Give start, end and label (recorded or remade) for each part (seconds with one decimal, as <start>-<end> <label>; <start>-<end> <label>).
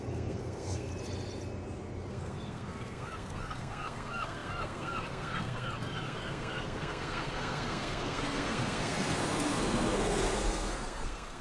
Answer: 0.0-0.9 remade; 0.9-2.1 recorded; 2.1-11.4 remade